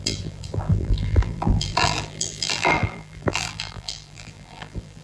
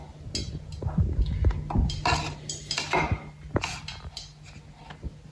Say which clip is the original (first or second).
second